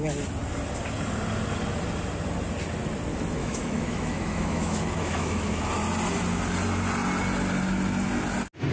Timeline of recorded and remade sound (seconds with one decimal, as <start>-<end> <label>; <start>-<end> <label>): 0.0-3.4 recorded; 3.4-5.6 remade; 5.6-8.7 recorded